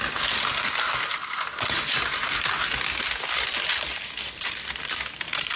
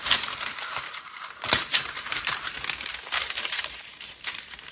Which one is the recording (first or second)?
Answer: first